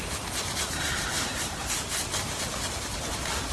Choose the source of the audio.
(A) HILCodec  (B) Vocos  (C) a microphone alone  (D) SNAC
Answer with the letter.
C